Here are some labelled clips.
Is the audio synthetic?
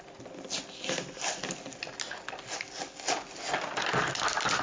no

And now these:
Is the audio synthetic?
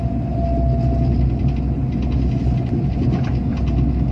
no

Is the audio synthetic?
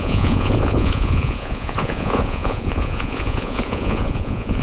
yes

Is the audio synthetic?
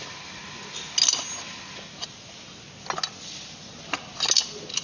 no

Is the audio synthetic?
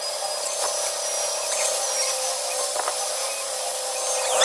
no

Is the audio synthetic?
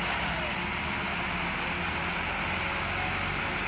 no